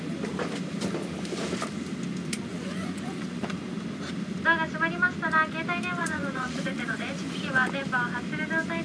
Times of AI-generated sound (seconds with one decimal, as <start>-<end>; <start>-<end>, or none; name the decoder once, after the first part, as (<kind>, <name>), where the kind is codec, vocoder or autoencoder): 2.5-3.8 (vocoder, Vocos); 6.0-7.5